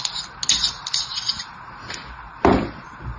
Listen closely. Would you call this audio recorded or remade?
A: recorded